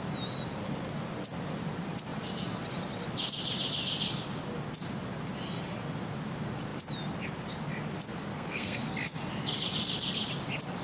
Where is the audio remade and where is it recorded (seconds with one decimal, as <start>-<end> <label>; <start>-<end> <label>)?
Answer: 0.0-8.3 recorded; 8.3-8.9 remade; 8.9-10.8 recorded